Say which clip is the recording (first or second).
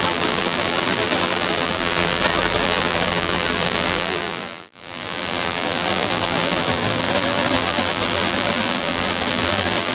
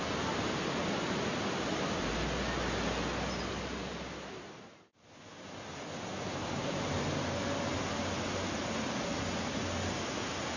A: second